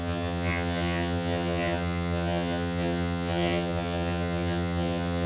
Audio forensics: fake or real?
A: fake